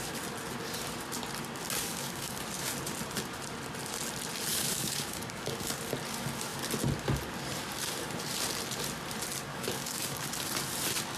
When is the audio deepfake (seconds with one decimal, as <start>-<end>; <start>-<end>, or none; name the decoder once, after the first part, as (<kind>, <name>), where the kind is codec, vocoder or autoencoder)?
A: 1.8-2.4 (codec, DAC); 4.5-5.8; 9.5-10.3